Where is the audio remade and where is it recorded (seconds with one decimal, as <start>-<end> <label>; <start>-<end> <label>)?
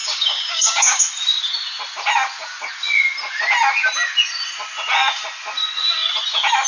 0.0-1.0 remade; 1.0-6.7 recorded